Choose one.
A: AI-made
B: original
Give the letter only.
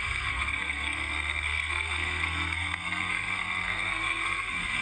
A